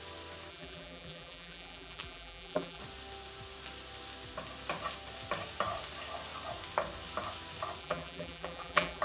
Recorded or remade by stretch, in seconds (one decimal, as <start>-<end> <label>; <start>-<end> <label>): 0.0-0.5 recorded; 0.5-2.8 remade; 2.8-7.8 recorded; 7.8-9.0 remade